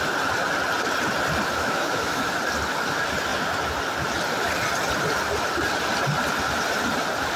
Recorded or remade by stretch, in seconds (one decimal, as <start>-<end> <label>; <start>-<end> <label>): 0.0-1.6 recorded; 1.6-2.4 remade; 2.4-7.4 recorded